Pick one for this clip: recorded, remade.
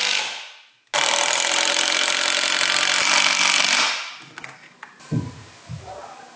recorded